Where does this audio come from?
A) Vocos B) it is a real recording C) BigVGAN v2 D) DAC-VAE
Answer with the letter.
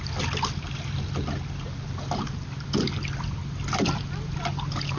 B